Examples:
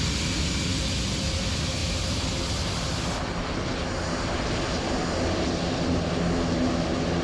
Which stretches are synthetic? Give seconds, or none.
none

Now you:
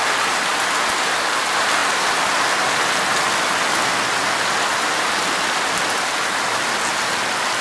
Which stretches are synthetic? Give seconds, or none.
none

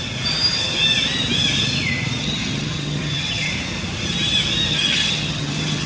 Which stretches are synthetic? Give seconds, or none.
2.2-3.5 (vocoder, HiFi-GAN); 4.7-5.9

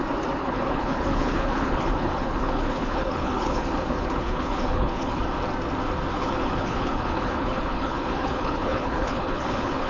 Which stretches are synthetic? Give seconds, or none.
0.4-5.2 (codec, HILCodec); 6.1-9.9

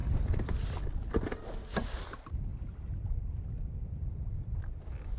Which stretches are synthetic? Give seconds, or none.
0.0-0.8 (vocoder, BigVGAN v2); 2.5-5.2